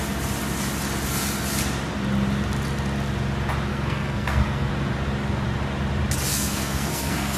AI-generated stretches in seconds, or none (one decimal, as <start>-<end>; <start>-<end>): 3.7-4.7; 6.3-7.4